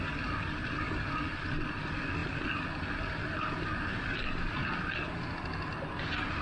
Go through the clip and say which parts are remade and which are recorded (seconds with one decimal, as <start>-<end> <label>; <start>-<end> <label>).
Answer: 0.0-6.4 recorded